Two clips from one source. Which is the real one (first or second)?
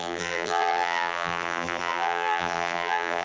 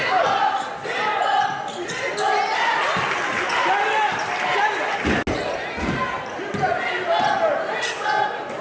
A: second